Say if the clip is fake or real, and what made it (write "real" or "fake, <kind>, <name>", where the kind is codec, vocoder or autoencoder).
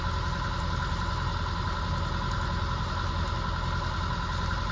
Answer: real